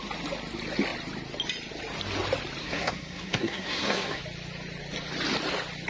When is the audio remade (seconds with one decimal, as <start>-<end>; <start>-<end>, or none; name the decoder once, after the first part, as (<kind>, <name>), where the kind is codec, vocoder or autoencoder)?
2.6-4.2 (codec, SNAC)